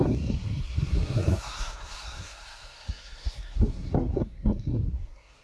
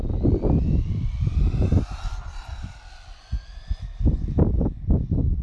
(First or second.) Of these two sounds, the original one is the second